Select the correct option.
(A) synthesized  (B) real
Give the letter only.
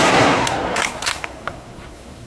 A